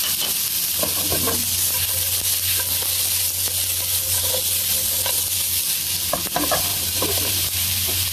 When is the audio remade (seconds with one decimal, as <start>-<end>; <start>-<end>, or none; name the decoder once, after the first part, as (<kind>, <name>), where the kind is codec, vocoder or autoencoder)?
6.7-8.1 (vocoder, BigVGAN v2)